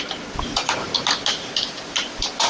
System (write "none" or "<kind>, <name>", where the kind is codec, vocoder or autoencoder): none